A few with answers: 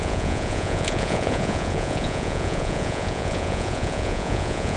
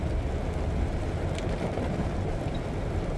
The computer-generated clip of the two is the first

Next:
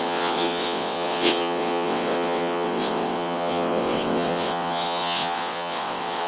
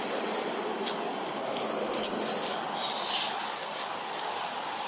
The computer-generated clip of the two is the first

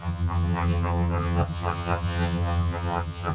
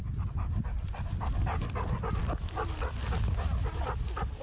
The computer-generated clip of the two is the first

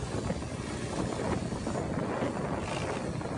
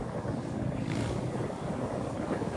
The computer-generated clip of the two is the second